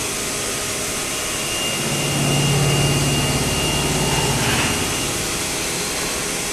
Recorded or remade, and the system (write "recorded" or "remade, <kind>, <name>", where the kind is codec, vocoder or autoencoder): recorded